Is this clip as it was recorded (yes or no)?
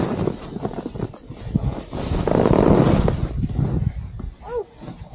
yes